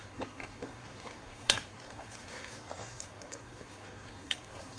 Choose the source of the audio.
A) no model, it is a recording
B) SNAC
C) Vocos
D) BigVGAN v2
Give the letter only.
B